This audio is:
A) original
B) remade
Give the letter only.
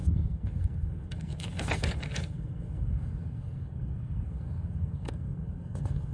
B